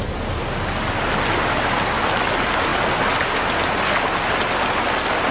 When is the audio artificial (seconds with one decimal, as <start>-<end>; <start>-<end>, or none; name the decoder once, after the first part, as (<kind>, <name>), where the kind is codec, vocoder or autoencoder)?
none